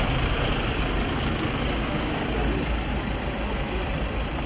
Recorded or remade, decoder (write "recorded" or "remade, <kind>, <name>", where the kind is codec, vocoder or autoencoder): recorded